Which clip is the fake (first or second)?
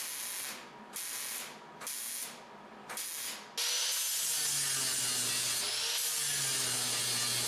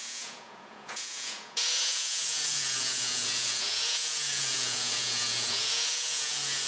second